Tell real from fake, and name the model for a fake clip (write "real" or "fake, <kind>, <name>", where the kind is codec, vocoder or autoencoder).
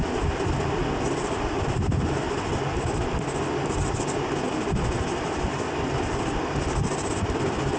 real